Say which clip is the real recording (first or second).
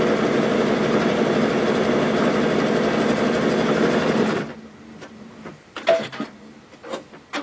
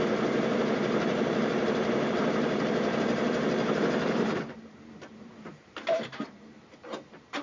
first